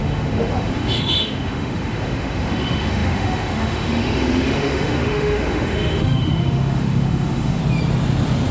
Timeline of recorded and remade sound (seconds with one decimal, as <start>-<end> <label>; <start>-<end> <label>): 0.0-7.6 remade; 7.6-8.5 recorded